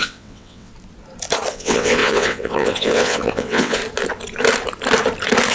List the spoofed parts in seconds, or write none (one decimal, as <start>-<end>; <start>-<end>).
0.0-0.7; 1.5-3.8